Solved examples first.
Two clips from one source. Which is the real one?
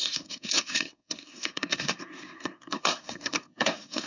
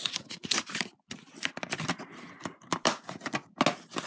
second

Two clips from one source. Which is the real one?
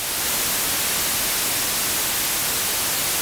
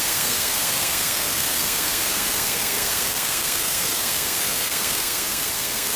first